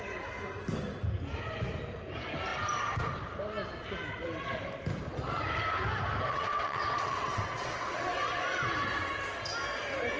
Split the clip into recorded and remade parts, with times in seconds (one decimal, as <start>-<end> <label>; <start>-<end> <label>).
0.0-6.3 recorded; 6.3-8.6 remade; 8.6-10.2 recorded